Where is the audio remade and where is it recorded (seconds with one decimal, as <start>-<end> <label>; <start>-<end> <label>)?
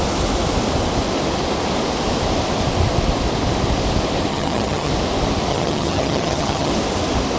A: 0.0-4.3 recorded; 4.3-4.9 remade; 4.9-5.5 recorded; 5.5-6.7 remade; 6.7-7.4 recorded